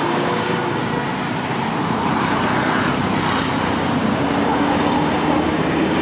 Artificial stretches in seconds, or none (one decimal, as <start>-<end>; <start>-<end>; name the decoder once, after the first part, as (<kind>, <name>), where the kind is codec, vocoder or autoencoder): 0.0-0.8 (codec, DAC); 4.4-6.0